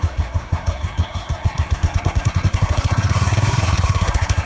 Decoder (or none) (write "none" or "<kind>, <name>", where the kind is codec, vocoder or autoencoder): codec, SNAC